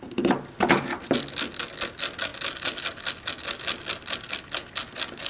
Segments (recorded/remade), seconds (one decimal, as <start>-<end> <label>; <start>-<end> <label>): 0.0-5.3 recorded